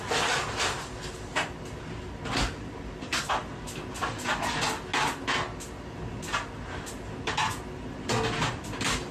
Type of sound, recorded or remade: recorded